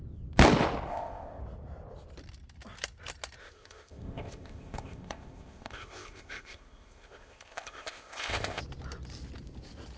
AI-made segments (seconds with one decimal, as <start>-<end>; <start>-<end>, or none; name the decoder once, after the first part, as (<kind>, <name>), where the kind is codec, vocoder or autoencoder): 0.9-1.4 (codec, ZipCodec); 3.4-8.6